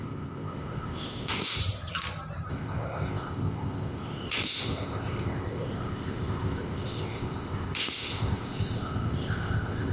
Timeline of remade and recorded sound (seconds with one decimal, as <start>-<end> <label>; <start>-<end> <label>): 0.0-1.6 remade; 1.6-2.5 recorded; 2.5-9.9 remade